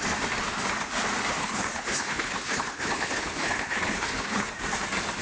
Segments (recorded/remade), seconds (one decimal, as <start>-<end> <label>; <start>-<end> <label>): 0.0-1.4 recorded; 1.4-4.5 remade; 4.5-5.2 recorded